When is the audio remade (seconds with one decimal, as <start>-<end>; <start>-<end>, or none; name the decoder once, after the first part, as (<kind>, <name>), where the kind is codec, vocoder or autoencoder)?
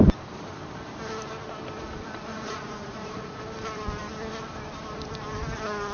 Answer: 2.3-3.4 (vocoder, Vocos)